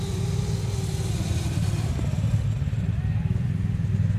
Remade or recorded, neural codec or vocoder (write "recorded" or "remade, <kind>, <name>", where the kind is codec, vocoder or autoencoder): recorded